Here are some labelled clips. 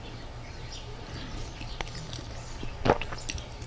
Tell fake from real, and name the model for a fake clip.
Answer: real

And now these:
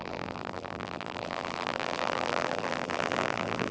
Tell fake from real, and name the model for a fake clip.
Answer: fake, vocoder, BigVGAN v2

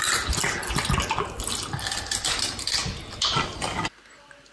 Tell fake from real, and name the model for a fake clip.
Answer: real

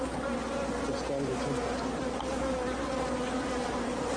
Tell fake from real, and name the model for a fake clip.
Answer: real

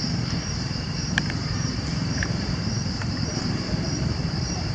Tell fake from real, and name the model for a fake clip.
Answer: fake, vocoder, BigVGAN v2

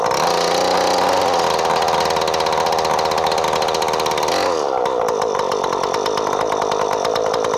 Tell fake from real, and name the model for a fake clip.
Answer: real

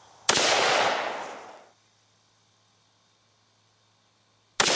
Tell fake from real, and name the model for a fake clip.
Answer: real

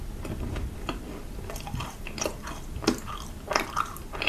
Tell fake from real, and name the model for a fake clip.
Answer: fake, vocoder, BigVGAN v2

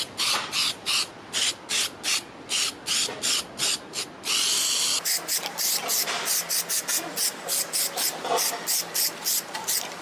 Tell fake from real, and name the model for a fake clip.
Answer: real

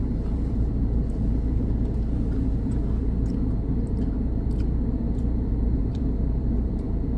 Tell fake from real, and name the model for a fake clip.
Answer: fake, vocoder, BigVGAN v2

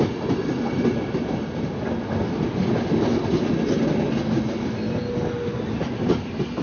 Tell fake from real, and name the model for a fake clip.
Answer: real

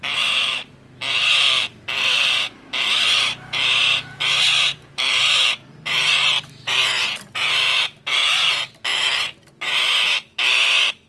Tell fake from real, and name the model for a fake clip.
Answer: fake, vocoder, BigVGAN v2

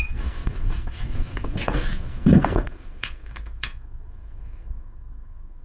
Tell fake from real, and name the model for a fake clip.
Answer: fake, codec, SNAC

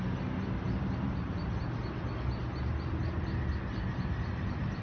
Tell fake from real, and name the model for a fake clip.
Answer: real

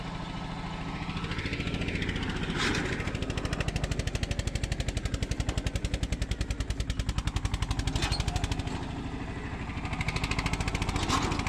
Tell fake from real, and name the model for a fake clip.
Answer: real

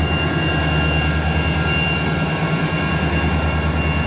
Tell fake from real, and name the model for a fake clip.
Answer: real